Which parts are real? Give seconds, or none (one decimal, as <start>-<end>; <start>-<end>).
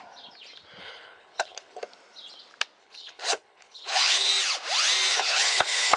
0.0-0.8; 1.8-2.8; 4.3-5.1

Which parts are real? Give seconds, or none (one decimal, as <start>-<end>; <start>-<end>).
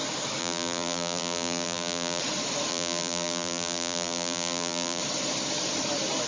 0.0-0.4; 2.2-2.7; 5.0-6.3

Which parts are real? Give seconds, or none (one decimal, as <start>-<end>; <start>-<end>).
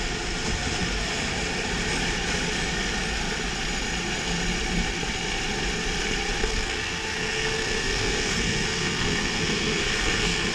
0.0-6.4